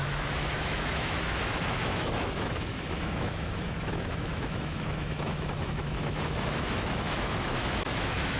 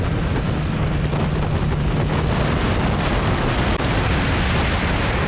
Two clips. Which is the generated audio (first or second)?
first